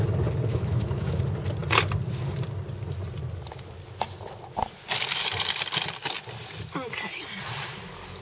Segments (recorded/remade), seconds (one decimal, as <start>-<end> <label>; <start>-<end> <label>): 0.0-0.5 recorded; 0.5-1.2 remade; 1.2-8.2 recorded